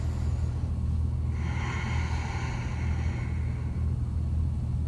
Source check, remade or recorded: recorded